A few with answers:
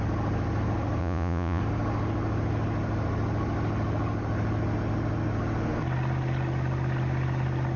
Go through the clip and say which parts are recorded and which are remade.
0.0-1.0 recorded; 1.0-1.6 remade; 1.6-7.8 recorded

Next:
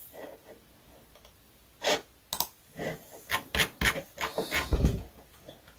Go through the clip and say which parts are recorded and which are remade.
0.0-4.3 recorded; 4.3-5.8 remade

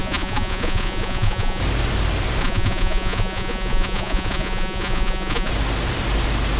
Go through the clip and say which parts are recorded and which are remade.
0.0-1.6 remade; 1.6-2.4 recorded; 2.4-5.5 remade; 5.5-6.6 recorded

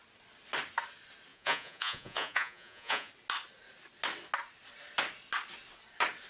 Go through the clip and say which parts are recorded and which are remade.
0.0-1.3 recorded; 1.3-3.1 remade; 3.1-6.3 recorded

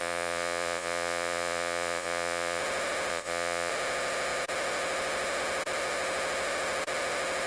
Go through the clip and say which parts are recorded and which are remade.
0.0-2.6 remade; 2.6-3.1 recorded; 3.1-3.7 remade; 3.7-7.5 recorded